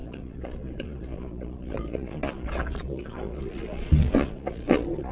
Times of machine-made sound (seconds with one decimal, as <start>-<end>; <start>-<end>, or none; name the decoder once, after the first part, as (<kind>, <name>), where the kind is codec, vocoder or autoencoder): 0.0-5.1 (vocoder, Vocos)